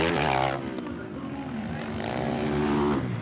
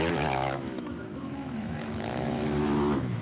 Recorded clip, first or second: first